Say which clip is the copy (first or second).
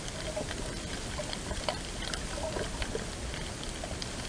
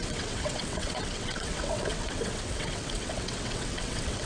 second